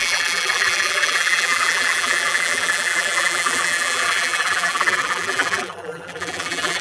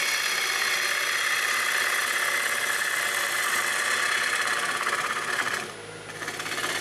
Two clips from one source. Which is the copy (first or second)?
first